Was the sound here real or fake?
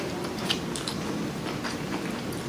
fake